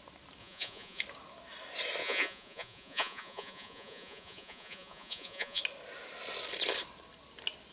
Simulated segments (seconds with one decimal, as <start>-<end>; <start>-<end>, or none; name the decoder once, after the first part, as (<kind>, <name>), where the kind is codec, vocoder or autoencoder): 0.4-1.0 (vocoder, Vocos); 2.0-5.6

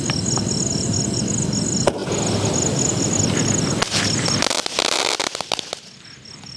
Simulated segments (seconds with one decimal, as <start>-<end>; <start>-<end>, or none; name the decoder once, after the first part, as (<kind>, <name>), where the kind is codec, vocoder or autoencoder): none

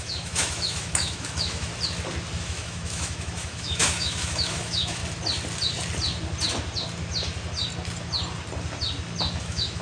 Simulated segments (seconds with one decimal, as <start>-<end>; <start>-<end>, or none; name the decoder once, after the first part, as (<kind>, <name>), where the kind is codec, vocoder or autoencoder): 0.0-1.7 (autoencoder, DAC-VAE); 2.4-5.0; 9.4-9.8

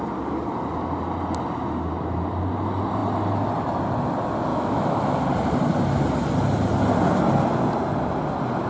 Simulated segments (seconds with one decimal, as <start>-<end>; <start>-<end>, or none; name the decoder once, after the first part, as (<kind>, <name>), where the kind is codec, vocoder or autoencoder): 4.5-5.2 (autoencoder, DAC-VAE)

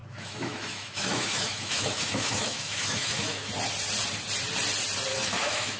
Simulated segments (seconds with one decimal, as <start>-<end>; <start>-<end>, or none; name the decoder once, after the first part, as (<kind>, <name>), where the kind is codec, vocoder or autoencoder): 0.0-3.5 (autoencoder, DAC-VAE); 5.1-5.8